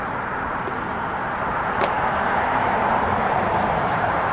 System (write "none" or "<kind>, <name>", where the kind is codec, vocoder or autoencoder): vocoder, BigVGAN v2